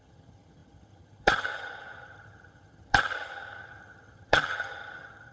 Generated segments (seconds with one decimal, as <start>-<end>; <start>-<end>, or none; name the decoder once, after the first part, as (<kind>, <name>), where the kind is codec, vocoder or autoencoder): 0.0-5.3 (vocoder, HiFi-GAN)